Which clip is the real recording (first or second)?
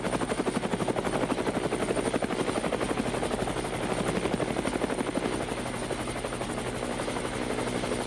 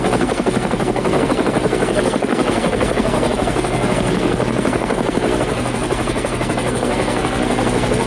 first